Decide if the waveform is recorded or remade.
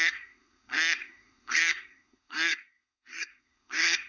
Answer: remade